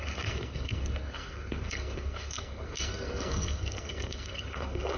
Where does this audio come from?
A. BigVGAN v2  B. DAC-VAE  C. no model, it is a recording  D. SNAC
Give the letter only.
D